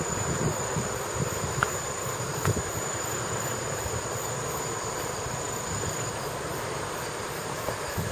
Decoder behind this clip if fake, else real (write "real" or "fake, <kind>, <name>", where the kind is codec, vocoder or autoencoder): fake, vocoder, BigVGAN v2